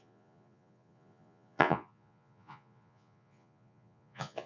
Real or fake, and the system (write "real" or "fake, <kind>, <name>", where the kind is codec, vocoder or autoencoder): fake, vocoder, Vocos